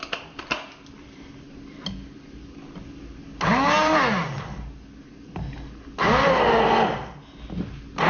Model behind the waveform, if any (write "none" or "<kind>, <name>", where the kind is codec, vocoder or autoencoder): none